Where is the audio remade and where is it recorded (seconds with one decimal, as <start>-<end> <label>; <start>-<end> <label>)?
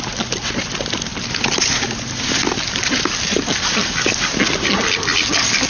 0.0-5.7 recorded